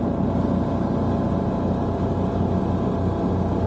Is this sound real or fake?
real